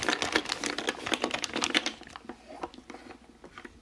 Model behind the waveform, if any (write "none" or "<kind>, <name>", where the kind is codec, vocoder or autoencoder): none